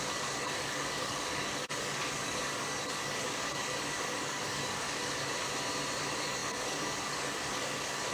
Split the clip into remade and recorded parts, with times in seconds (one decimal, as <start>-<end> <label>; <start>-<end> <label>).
0.0-5.3 remade; 5.3-6.0 recorded; 6.0-8.1 remade